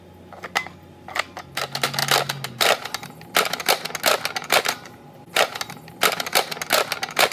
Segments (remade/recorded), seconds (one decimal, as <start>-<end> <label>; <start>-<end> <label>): 0.0-7.3 recorded